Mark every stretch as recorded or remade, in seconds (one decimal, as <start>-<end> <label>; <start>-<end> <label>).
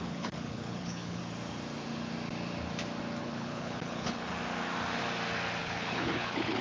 0.0-1.2 remade; 1.2-3.2 recorded; 3.2-4.3 remade; 4.3-5.6 recorded; 5.6-6.6 remade